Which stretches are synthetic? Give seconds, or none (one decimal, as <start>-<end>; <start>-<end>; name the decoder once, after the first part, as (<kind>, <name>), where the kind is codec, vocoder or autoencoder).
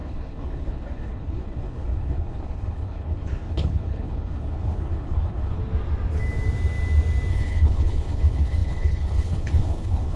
0.0-5.6 (codec, HILCodec); 7.3-10.2